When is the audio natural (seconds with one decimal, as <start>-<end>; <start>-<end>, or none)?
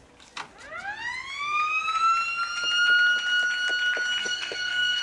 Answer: 0.0-4.2